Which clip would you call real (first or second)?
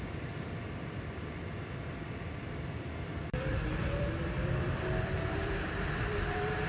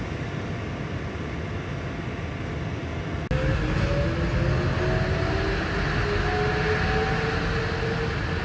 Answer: second